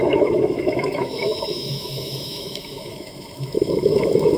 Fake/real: fake